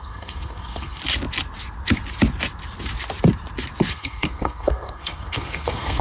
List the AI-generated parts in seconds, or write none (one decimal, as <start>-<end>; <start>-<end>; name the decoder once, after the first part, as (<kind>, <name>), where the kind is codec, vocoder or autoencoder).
0.0-1.0 (codec, SNAC); 3.9-6.0